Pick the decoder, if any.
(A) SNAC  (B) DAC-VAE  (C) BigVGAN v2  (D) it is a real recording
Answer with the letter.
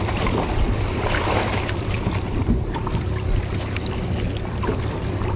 C